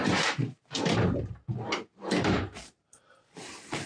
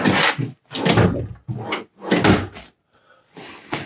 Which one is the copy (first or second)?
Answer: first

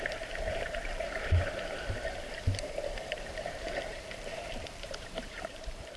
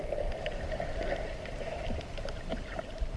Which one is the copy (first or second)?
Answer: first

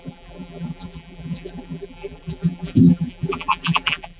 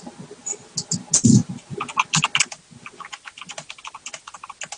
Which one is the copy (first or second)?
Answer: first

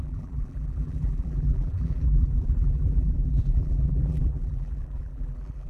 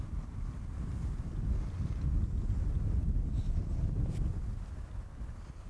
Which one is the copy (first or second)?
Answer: first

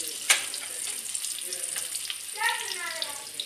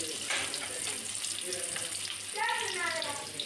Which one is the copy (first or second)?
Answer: second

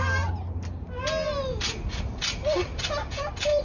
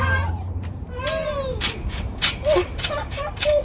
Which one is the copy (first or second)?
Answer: second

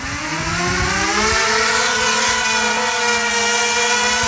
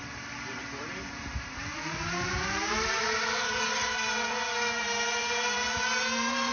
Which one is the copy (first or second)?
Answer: second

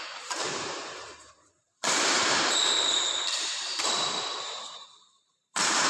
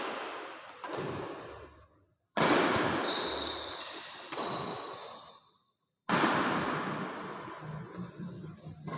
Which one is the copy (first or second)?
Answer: first